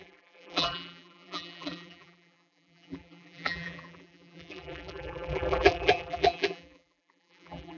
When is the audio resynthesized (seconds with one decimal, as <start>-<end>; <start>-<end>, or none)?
0.0-7.8